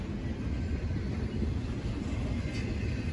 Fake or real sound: real